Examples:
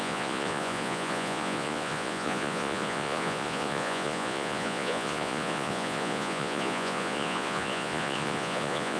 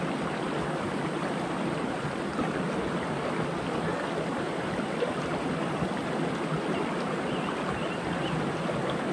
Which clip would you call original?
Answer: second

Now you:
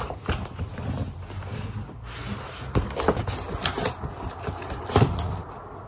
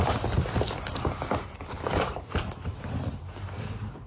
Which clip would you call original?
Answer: first